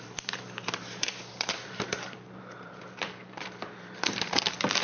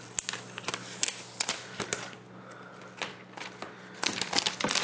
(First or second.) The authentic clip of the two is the second